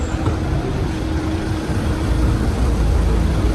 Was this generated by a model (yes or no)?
yes